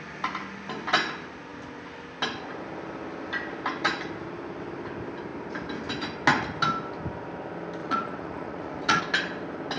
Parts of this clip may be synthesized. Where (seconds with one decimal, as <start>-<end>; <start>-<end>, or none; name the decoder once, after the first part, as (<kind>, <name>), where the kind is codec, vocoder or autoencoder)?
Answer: 7.8-9.0 (vocoder, Vocos)